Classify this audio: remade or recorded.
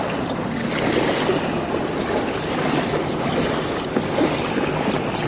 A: recorded